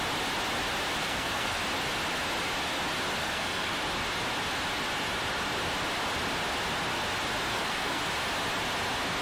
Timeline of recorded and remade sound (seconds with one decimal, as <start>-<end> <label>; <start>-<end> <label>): 0.0-1.0 recorded; 1.0-1.6 remade; 1.6-3.2 recorded; 3.2-3.7 remade; 3.7-7.5 recorded; 7.5-8.0 remade; 8.0-9.2 recorded